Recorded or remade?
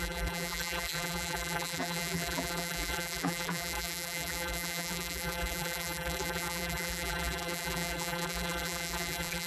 remade